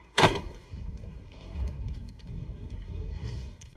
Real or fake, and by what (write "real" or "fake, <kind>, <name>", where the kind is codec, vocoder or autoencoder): fake, codec, SNAC